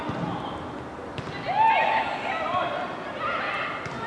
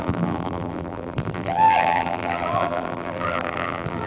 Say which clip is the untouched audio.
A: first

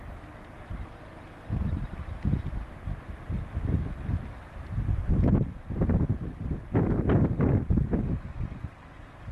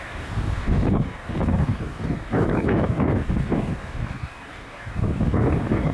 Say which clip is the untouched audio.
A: first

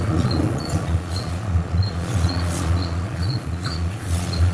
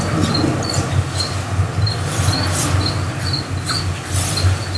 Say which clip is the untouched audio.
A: second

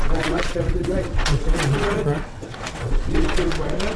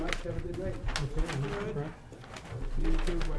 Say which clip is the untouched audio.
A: second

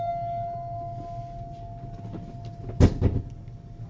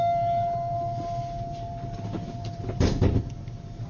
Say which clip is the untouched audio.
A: first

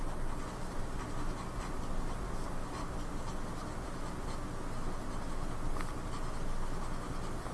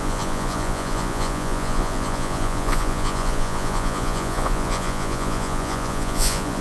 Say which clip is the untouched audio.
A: first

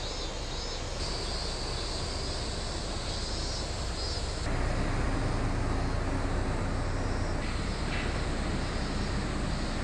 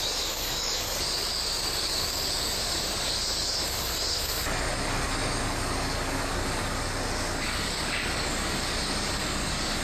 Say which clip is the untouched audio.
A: first